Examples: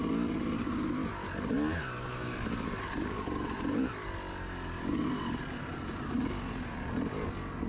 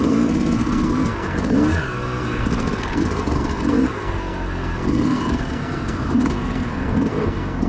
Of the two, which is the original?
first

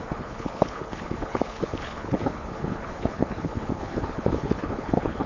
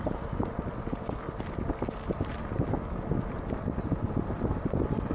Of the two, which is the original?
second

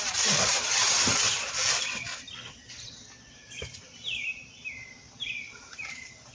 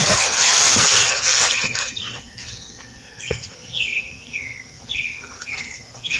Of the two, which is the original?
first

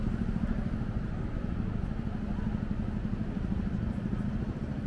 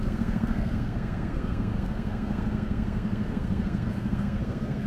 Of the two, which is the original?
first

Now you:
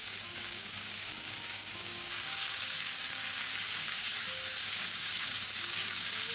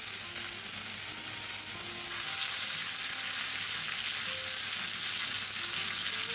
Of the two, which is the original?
second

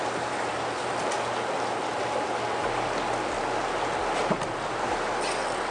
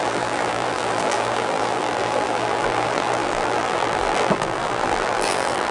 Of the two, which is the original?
first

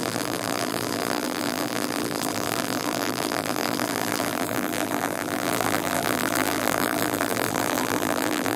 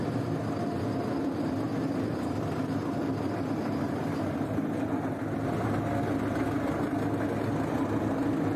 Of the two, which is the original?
second